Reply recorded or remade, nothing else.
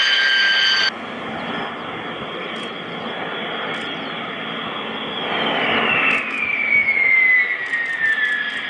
recorded